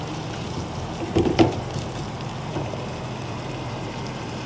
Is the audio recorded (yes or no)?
yes